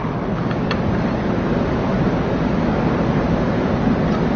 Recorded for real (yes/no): yes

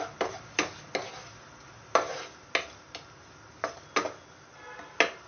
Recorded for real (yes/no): yes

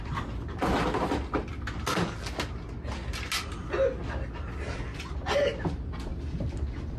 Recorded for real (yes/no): yes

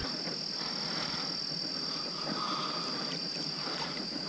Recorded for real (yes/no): yes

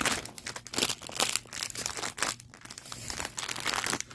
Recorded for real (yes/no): yes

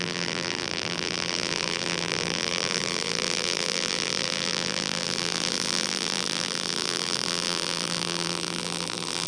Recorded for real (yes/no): no